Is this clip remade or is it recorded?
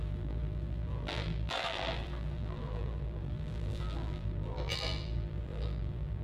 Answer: remade